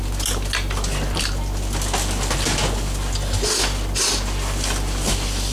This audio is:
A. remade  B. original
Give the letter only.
B